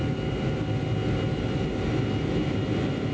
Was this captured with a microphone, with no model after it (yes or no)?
yes